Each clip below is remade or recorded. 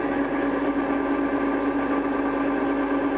recorded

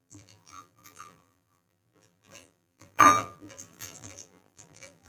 remade